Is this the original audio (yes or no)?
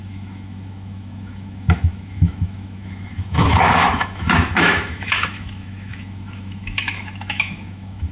no